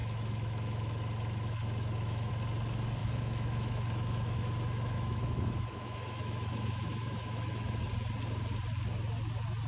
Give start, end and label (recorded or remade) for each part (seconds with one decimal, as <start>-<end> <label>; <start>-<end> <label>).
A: 0.0-2.3 remade; 2.3-3.0 recorded; 3.0-7.8 remade; 7.8-9.7 recorded